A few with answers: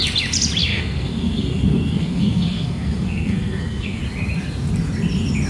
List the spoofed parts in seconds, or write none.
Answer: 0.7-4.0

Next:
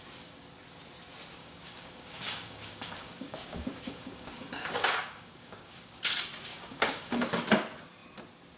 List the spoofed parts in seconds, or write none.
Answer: 1.4-6.0; 6.5-7.2

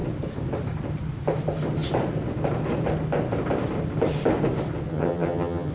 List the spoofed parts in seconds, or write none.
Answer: 4.9-5.7